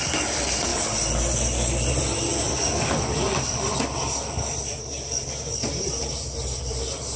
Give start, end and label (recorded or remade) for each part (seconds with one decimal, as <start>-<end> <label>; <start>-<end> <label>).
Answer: 0.0-0.7 remade; 0.7-1.9 recorded; 1.9-7.2 remade